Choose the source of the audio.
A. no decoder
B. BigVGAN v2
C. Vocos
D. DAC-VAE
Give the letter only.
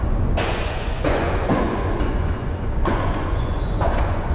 C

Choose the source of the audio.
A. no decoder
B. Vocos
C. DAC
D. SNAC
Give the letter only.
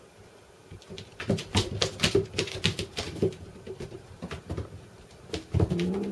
A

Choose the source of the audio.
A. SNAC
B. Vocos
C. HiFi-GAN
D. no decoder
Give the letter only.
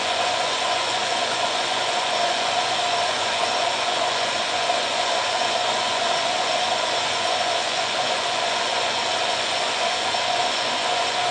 B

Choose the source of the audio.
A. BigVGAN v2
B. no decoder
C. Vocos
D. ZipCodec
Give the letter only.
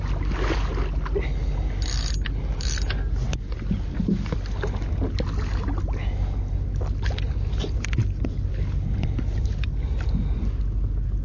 B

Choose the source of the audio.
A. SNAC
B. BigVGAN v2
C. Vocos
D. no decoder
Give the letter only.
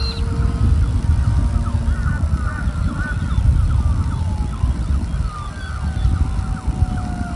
D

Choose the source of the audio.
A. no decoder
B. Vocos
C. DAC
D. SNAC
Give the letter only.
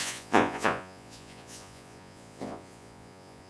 B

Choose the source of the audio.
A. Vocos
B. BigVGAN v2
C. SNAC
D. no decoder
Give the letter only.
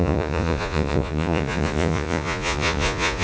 A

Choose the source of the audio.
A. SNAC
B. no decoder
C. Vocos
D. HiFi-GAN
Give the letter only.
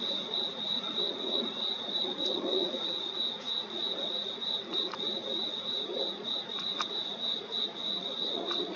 C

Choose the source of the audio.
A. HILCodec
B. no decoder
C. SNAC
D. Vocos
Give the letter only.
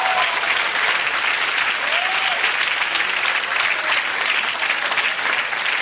B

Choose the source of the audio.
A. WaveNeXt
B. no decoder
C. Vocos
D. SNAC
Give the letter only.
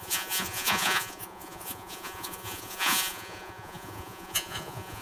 C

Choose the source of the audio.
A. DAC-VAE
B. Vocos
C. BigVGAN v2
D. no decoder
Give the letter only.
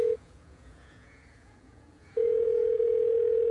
B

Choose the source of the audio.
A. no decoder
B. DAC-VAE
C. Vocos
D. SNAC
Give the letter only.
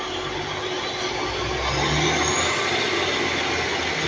A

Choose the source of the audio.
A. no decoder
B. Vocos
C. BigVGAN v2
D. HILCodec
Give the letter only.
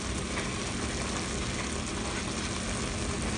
A